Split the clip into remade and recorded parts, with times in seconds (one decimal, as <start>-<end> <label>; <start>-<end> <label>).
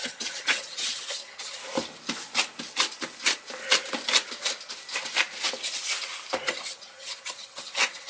0.0-1.6 remade; 1.6-6.5 recorded; 6.5-8.1 remade